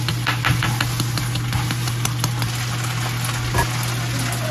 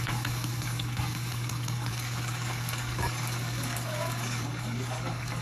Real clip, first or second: first